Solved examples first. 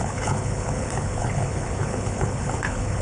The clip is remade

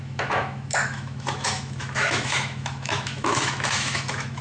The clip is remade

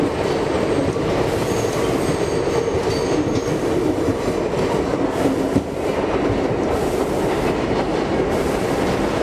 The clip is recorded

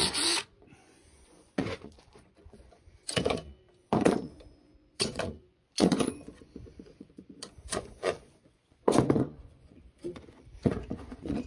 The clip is remade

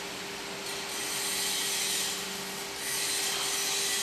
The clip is recorded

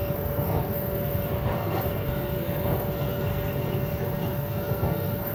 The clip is remade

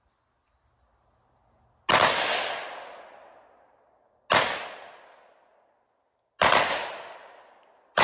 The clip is recorded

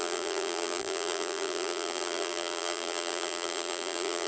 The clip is remade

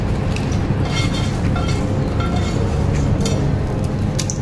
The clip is recorded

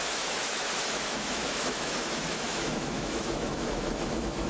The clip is remade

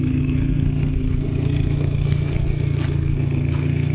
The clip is remade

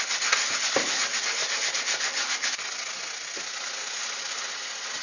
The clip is recorded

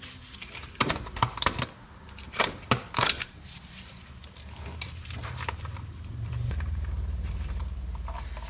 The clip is remade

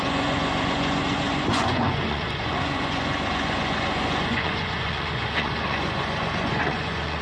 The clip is remade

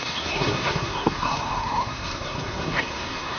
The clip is remade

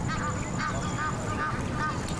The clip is recorded